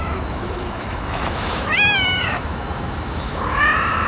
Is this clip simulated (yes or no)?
yes